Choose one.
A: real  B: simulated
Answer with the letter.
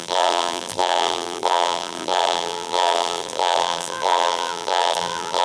B